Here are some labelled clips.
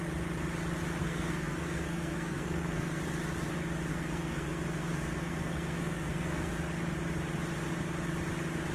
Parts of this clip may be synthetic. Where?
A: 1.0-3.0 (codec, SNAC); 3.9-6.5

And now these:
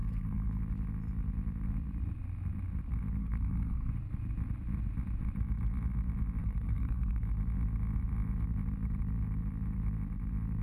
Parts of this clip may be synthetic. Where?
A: 0.0-0.6 (codec, SNAC); 3.2-3.9; 6.4-7.3